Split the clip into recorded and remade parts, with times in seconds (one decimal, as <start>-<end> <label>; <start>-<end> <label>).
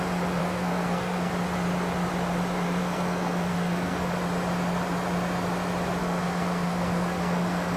0.0-0.4 recorded; 0.4-1.3 remade; 1.3-2.8 recorded; 2.8-4.1 remade; 4.1-6.0 recorded; 6.0-7.8 remade